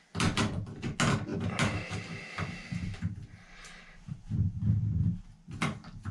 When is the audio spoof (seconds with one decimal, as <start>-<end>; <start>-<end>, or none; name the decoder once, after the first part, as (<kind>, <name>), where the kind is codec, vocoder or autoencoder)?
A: none